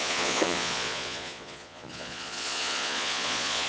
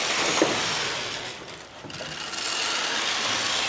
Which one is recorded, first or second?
second